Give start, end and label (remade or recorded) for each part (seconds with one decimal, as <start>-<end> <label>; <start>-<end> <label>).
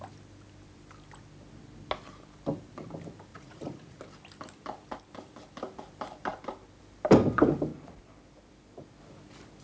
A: 0.0-3.3 recorded; 3.3-4.0 remade; 4.0-9.6 recorded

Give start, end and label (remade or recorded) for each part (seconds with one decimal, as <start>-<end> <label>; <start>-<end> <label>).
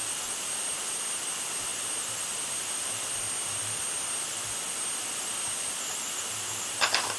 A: 0.0-7.2 recorded